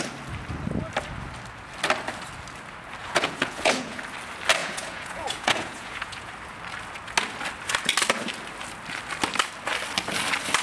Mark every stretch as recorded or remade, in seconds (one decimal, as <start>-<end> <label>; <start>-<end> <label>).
0.0-3.0 recorded; 3.0-4.0 remade; 4.0-4.6 recorded; 4.6-6.3 remade; 6.3-10.6 recorded